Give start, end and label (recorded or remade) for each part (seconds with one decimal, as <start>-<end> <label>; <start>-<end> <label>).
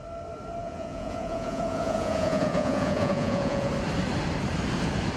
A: 0.0-0.6 recorded; 0.6-3.7 remade; 3.7-5.2 recorded